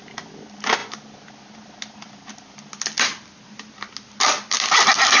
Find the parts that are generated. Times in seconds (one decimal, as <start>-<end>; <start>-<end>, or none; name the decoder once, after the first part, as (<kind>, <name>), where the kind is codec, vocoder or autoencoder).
none

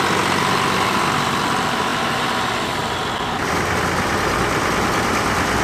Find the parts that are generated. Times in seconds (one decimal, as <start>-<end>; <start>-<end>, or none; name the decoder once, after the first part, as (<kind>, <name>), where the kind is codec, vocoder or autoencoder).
none

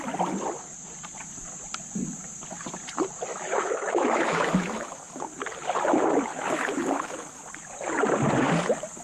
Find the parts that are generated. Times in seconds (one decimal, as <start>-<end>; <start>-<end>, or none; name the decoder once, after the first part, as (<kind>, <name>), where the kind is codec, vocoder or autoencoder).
3.3-5.2 (autoencoder, DAC-VAE); 6.3-7.4

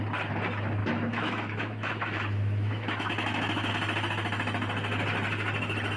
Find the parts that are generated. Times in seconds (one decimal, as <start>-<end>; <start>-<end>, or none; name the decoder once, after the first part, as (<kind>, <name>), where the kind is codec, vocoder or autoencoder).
0.8-3.7 (autoencoder, DAC-VAE)